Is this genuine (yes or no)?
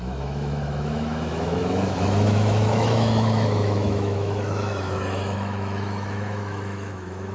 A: no